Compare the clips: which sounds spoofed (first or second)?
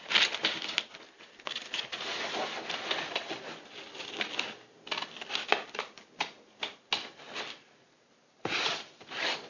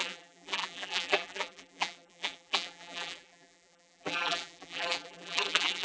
second